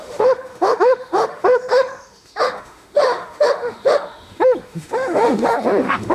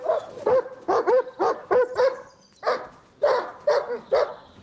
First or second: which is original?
second